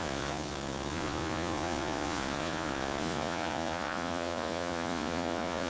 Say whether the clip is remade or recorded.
remade